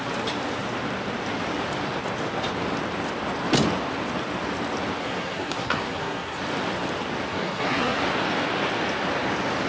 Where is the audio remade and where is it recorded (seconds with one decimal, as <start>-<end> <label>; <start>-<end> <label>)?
0.0-5.0 recorded; 5.0-6.4 remade; 6.4-7.3 recorded; 7.3-8.0 remade; 8.0-9.7 recorded